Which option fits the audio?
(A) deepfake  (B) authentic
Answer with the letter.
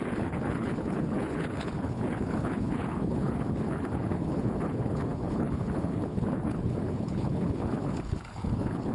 A